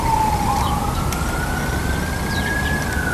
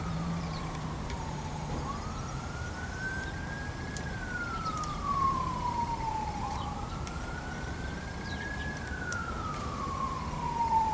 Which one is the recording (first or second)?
first